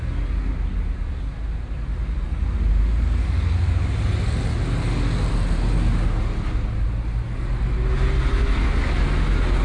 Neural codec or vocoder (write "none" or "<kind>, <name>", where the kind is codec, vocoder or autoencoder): none